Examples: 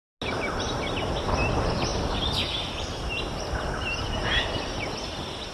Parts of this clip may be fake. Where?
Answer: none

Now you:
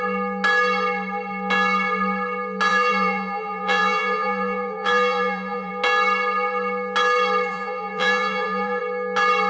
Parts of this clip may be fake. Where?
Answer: 2.7-5.7 (vocoder, BigVGAN v2); 7.5-8.8

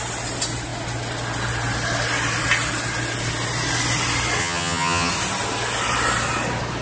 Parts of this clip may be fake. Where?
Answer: 4.4-5.1 (vocoder, HiFi-GAN)

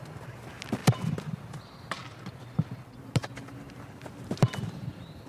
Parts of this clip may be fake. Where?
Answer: none